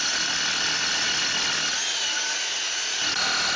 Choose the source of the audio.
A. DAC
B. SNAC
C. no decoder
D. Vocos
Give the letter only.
C